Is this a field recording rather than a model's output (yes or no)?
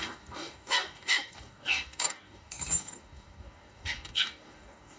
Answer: no